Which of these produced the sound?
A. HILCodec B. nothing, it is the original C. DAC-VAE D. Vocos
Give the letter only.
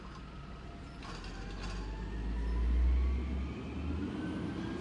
B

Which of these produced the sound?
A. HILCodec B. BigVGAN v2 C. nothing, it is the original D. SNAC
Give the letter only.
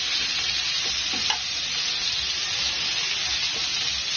C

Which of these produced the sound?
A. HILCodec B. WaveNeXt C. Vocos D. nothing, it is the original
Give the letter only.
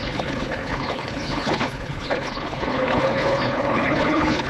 A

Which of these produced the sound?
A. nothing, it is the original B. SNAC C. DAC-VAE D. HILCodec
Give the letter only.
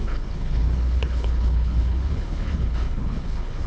D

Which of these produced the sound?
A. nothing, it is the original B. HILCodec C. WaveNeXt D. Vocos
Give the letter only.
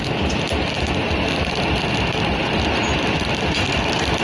A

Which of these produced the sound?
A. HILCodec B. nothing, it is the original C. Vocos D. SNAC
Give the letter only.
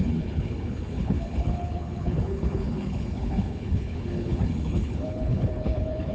A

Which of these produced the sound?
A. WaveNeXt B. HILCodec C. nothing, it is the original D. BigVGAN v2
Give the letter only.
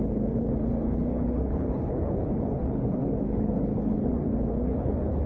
B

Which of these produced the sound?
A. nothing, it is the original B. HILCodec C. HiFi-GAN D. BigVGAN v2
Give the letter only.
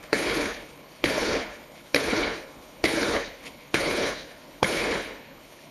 B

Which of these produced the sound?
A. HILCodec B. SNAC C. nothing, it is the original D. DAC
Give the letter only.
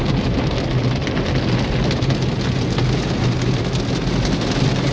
C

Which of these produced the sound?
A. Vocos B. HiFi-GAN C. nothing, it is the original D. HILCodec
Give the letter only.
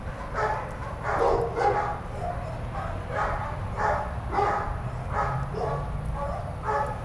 C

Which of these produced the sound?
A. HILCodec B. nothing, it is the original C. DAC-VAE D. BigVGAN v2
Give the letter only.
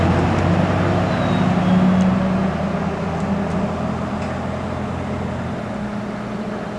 B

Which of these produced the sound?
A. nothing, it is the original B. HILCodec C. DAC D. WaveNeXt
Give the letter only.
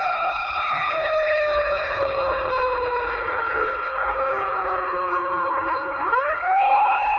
B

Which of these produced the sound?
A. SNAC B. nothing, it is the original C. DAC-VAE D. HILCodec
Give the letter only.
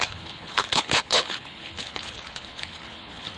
D